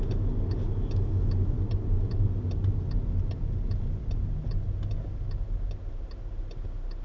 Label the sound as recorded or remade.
recorded